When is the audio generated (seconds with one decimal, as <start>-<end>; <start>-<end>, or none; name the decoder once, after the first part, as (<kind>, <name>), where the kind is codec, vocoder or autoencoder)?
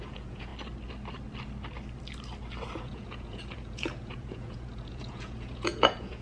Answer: 0.0-0.5 (vocoder, Vocos); 2.8-6.2